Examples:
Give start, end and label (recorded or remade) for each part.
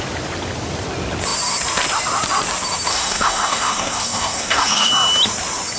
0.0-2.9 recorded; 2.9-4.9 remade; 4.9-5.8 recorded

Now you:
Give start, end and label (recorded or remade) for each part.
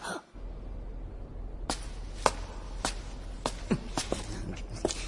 0.0-5.1 recorded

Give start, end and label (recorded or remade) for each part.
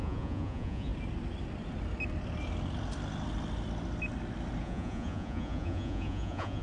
0.0-0.9 remade; 0.9-4.6 recorded; 4.6-6.6 remade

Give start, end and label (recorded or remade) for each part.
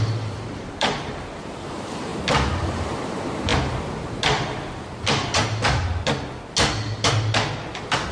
0.0-2.1 remade; 2.1-2.6 recorded; 2.6-3.5 remade; 3.5-8.1 recorded